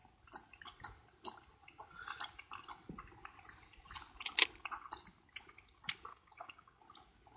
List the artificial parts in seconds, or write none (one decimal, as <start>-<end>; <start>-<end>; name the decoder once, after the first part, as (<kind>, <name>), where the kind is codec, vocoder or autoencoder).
6.1-6.8 (codec, DAC)